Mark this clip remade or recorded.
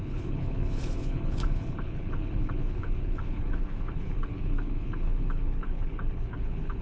remade